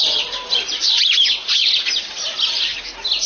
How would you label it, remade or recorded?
recorded